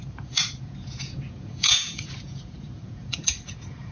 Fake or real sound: fake